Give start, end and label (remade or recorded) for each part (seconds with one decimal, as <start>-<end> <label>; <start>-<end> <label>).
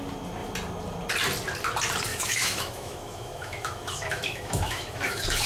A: 0.0-2.1 recorded; 2.1-5.5 remade